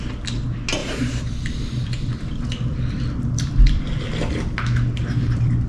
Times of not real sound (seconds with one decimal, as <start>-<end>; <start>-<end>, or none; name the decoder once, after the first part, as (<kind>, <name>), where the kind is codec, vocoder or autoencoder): 0.8-3.5 (vocoder, BigVGAN v2); 5.0-5.7